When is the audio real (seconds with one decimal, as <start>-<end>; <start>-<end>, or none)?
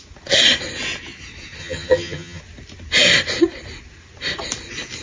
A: 0.0-1.6; 2.4-5.0